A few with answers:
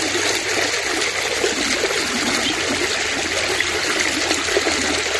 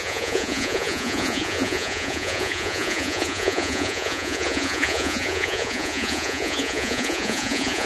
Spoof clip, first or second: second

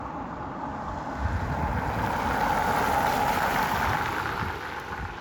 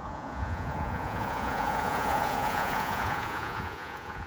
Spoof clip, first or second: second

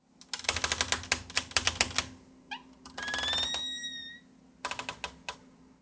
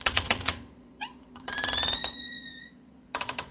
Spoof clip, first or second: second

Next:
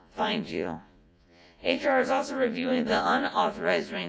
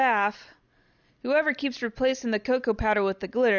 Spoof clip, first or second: first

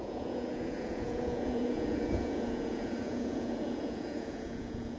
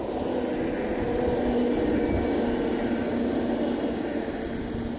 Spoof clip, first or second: first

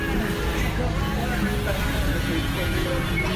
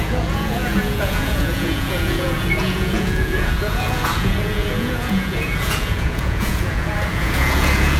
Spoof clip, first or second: second